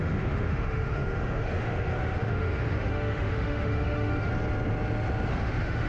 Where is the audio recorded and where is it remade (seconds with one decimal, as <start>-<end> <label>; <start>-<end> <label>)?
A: 0.0-4.3 remade; 4.3-5.3 recorded; 5.3-5.9 remade